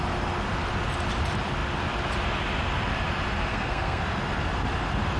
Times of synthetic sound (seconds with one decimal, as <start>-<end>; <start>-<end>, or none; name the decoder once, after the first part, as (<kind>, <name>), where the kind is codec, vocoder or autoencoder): 3.5-4.0 (codec, SNAC)